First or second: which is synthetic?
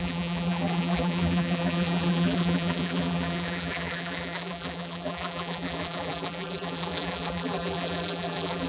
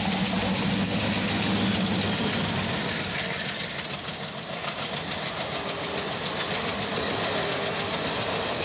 first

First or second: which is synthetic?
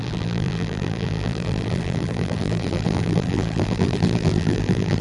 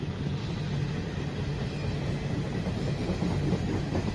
first